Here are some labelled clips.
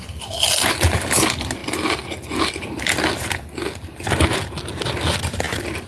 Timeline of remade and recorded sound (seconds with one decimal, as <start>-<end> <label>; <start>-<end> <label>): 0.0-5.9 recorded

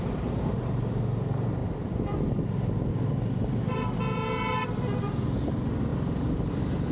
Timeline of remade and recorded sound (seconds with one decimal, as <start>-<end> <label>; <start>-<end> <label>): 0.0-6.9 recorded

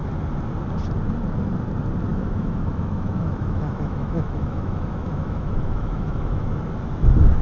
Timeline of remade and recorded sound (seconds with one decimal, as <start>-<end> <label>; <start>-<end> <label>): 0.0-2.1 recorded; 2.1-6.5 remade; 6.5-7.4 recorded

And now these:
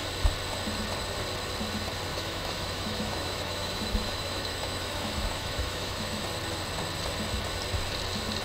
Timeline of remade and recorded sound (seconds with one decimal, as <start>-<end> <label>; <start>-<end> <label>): 0.0-2.1 recorded; 2.1-6.2 remade; 6.2-8.4 recorded